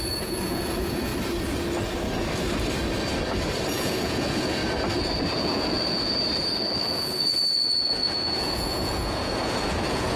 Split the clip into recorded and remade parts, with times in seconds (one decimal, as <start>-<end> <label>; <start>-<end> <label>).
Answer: 0.0-1.1 remade; 1.1-3.7 recorded; 3.7-4.6 remade; 4.6-5.4 recorded; 5.4-6.1 remade; 6.1-6.8 recorded; 6.8-10.2 remade